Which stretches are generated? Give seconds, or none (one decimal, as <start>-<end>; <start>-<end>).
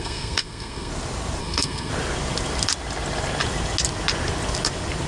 0.0-0.9; 1.4-1.9